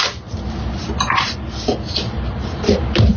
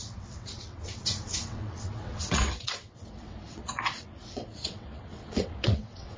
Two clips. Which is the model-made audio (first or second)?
second